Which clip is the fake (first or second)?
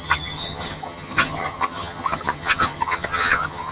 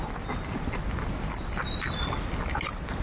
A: first